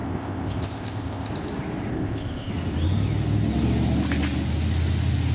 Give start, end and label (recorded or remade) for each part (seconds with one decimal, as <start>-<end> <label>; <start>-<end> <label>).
0.0-1.3 remade; 1.3-1.9 recorded; 1.9-2.5 remade; 2.5-5.3 recorded